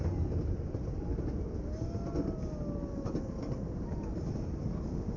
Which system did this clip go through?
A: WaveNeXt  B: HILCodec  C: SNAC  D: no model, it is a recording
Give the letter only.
D